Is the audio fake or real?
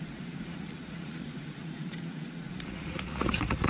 fake